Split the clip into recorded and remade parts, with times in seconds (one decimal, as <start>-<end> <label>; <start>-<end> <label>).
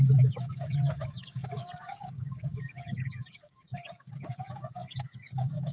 0.0-5.7 remade